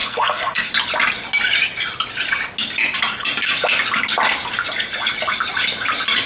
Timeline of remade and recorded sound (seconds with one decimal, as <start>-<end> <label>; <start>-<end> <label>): 0.0-0.7 remade; 0.7-6.3 recorded